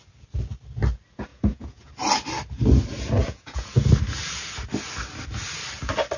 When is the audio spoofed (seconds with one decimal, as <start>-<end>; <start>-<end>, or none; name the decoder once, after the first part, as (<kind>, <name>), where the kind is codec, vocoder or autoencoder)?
1.3-1.9 (vocoder, Vocos); 3.2-3.9